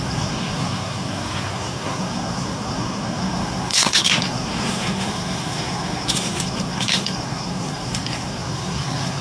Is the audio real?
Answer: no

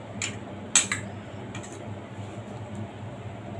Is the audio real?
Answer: yes